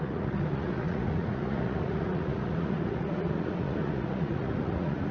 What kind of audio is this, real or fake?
fake